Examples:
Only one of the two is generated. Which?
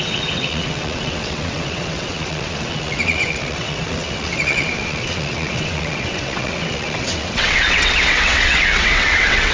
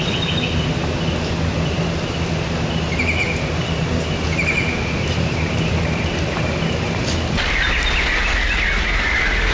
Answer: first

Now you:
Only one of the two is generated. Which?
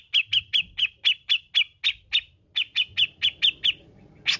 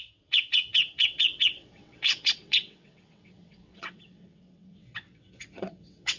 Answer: second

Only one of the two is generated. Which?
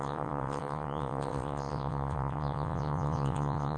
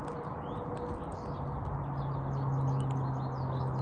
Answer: first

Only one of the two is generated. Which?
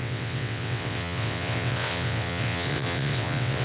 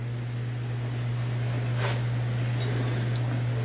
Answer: first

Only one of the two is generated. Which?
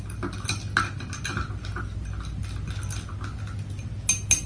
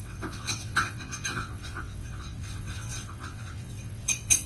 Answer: second